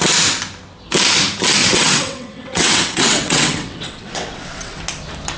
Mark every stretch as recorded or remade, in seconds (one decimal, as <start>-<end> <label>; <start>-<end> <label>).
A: 0.0-1.6 recorded; 1.6-4.8 remade; 4.8-5.4 recorded